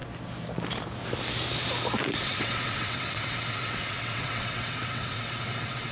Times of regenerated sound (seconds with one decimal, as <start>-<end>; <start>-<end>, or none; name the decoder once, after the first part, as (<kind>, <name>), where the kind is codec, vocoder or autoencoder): 2.2-5.9 (vocoder, WaveNeXt)